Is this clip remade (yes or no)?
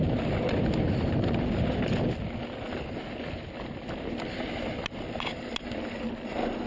no